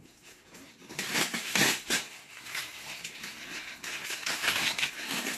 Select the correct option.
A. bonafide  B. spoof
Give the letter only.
B